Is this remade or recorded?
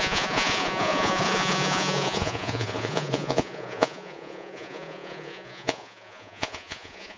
remade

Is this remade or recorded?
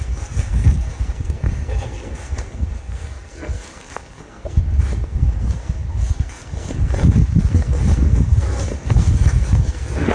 remade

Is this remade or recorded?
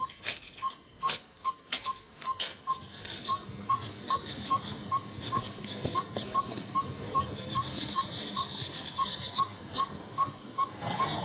remade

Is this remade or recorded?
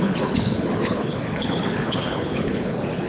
remade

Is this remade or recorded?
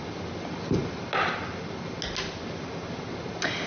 recorded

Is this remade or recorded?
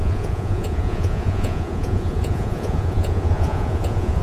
remade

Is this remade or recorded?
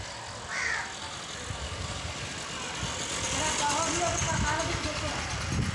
recorded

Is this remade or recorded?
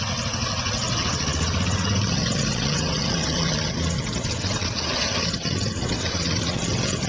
remade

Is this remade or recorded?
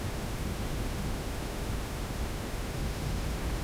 remade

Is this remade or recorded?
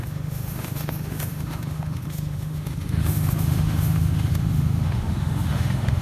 remade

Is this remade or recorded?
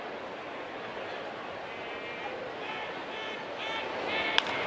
recorded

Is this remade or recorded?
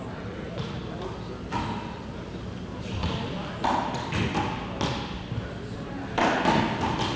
recorded